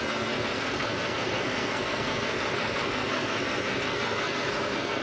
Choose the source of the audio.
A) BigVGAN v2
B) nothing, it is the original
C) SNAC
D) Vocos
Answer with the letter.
C